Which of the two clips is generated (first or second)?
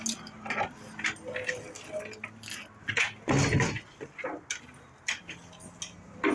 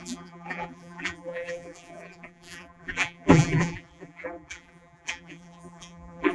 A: second